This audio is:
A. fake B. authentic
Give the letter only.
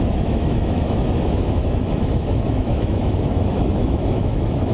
A